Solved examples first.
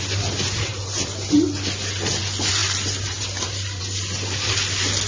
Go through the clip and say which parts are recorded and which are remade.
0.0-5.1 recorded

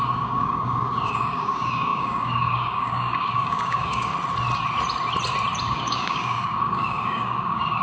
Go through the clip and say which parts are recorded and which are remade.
0.0-4.1 remade; 4.1-5.6 recorded; 5.6-7.8 remade

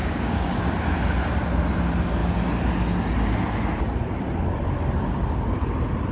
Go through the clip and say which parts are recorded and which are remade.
0.0-0.6 remade; 0.6-6.1 recorded

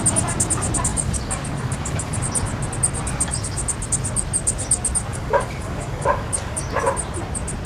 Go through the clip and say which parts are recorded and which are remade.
0.0-0.9 recorded; 0.9-2.2 remade; 2.2-5.1 recorded; 5.1-6.6 remade; 6.6-7.7 recorded

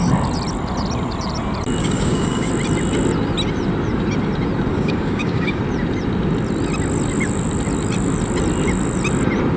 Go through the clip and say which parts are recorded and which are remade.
0.0-1.8 recorded; 1.8-2.5 remade; 2.5-4.7 recorded; 4.7-5.6 remade; 5.6-9.6 recorded